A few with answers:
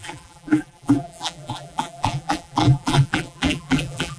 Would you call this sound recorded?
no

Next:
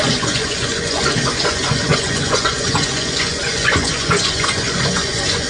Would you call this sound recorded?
no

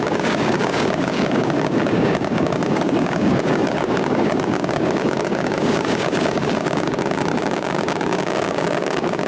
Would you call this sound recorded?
no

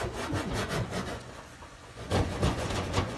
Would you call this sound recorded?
no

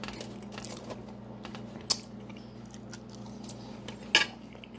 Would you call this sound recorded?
yes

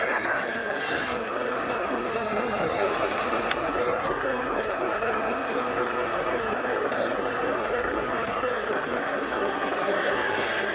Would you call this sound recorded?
no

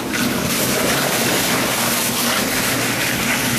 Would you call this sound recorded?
no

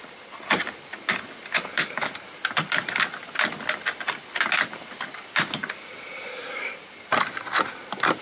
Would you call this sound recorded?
yes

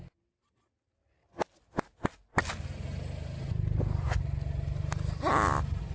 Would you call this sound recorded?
yes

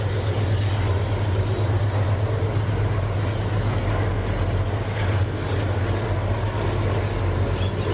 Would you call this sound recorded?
yes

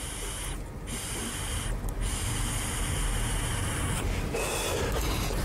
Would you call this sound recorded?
yes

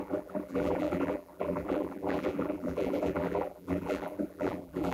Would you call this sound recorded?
no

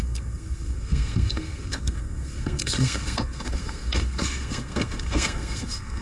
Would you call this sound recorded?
no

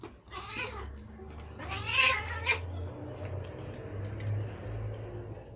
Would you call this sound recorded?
yes